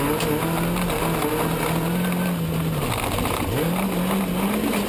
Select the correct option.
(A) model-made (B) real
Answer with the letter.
B